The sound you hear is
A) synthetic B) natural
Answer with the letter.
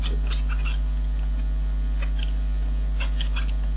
B